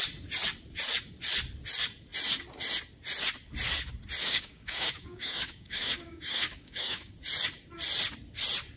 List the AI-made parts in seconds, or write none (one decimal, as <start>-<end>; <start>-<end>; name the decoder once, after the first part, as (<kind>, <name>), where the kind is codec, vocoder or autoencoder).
4.2-7.1 (codec, DAC)